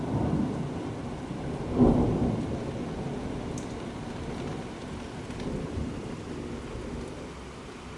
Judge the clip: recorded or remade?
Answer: recorded